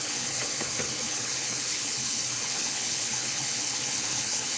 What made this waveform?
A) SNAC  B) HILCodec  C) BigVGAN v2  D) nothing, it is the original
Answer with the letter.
B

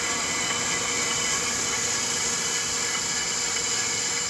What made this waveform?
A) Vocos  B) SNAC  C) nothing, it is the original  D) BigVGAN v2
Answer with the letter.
C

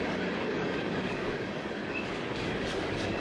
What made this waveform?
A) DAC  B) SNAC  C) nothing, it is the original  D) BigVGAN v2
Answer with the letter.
A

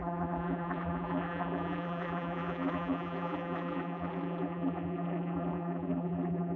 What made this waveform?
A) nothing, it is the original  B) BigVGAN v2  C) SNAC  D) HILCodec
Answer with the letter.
B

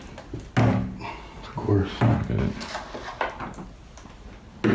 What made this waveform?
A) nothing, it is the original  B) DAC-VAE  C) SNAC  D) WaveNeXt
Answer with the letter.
A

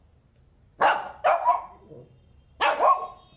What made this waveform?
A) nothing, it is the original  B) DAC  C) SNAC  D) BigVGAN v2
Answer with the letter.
A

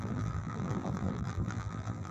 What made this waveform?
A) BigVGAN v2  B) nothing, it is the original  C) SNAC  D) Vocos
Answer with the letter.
A